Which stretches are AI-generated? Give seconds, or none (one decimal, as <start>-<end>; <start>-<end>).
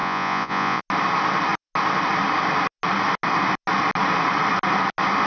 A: 0.0-0.8